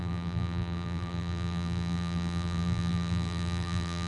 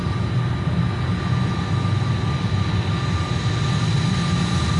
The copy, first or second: first